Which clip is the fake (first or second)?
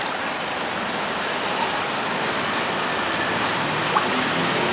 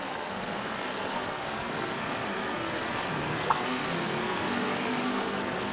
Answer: second